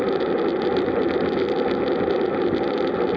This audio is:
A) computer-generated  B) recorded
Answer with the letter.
B